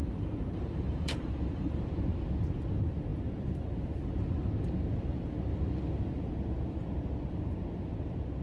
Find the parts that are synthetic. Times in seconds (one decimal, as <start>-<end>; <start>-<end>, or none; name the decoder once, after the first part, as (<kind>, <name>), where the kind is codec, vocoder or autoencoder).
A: 0.0-1.8 (vocoder, BigVGAN v2)